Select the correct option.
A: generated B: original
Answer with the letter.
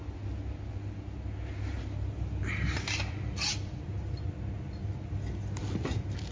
B